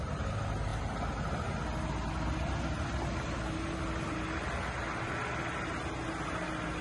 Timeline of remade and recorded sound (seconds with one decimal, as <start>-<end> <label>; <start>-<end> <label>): 0.0-6.8 recorded